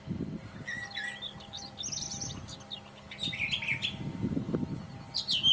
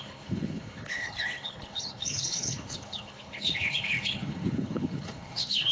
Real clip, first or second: first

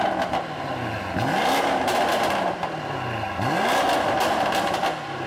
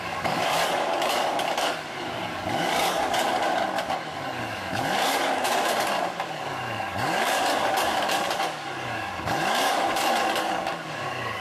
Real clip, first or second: first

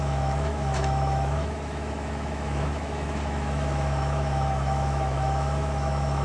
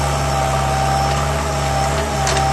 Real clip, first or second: second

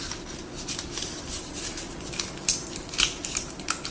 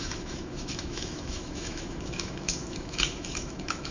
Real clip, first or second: first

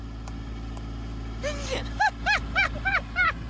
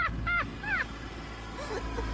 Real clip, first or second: second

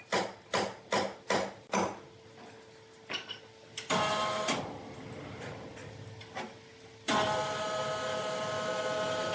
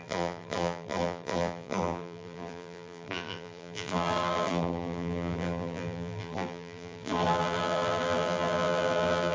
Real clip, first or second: first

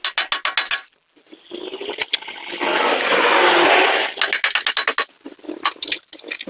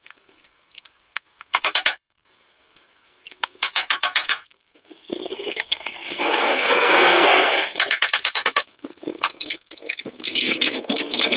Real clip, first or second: first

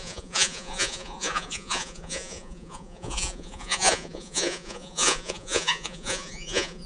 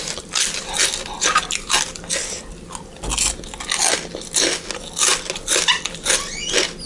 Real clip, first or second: second